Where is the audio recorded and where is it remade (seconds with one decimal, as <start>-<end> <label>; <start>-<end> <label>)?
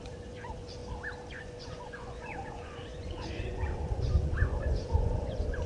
0.0-0.8 remade; 0.8-1.3 recorded; 1.3-5.7 remade